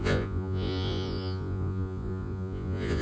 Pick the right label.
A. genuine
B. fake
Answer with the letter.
B